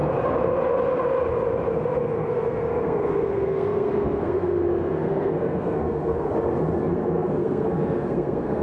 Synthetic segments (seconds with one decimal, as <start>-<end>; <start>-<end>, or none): 2.0-6.3; 6.8-8.6